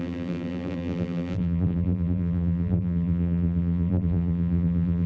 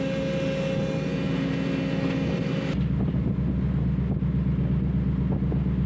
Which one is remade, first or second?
first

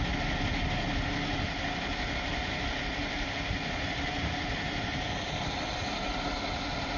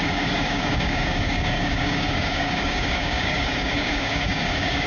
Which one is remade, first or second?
second